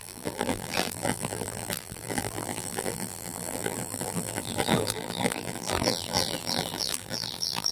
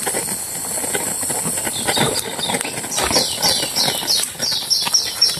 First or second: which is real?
second